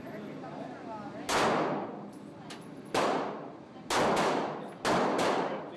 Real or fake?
real